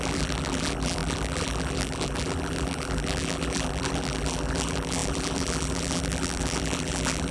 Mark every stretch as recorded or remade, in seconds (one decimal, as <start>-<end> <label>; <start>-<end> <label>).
0.0-7.3 remade